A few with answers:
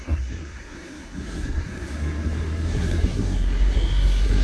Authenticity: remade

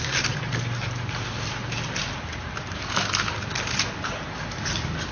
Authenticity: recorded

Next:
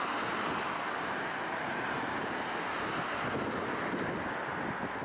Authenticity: recorded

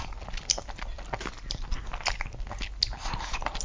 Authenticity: recorded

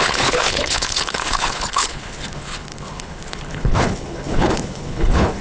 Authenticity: remade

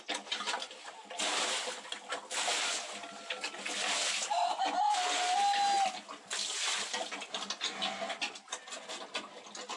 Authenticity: recorded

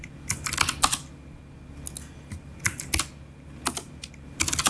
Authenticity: recorded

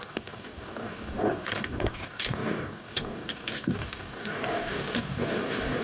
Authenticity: remade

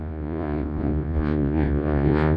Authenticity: remade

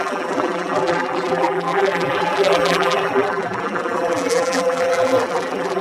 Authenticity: remade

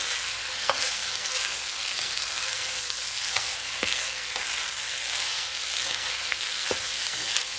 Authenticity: remade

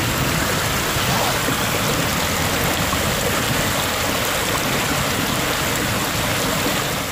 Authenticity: recorded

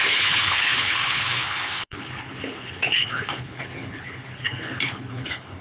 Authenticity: remade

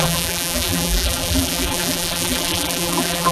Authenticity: remade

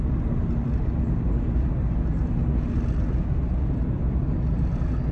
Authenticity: recorded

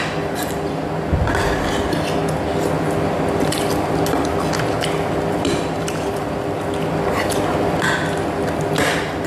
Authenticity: recorded